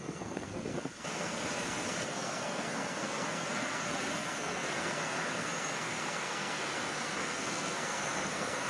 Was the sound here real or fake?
fake